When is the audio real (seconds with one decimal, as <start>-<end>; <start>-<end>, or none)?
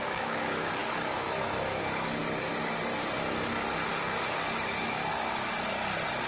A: 2.2-4.3; 5.0-6.3